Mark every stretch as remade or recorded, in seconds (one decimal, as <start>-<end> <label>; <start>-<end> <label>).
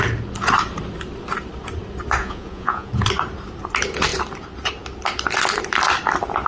0.0-2.2 recorded; 2.2-2.9 remade; 2.9-6.5 recorded